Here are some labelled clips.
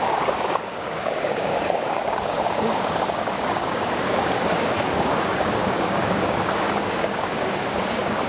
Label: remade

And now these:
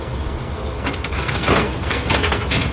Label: remade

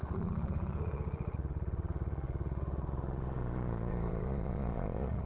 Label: remade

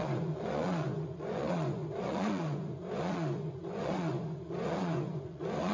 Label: remade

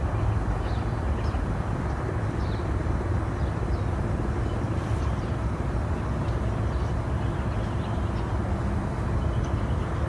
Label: recorded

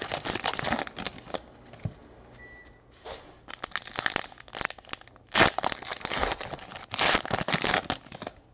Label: recorded